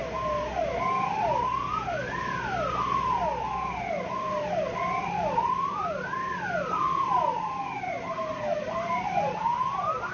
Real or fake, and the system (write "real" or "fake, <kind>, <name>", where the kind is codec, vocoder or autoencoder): real